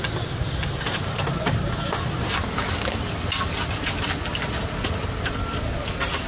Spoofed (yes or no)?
no